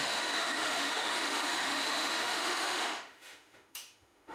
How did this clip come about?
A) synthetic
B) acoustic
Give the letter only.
A